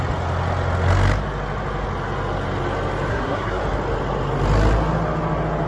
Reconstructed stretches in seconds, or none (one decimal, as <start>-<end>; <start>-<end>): 3.1-3.6